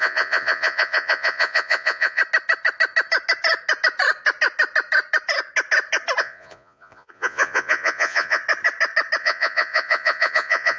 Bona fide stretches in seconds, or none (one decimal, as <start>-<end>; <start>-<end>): 2.2-6.2; 8.4-9.2